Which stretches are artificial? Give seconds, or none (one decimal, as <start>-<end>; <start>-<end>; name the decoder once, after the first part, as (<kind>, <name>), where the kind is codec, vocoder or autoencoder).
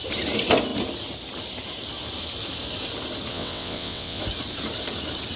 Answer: 3.3-4.2 (vocoder, WaveNeXt)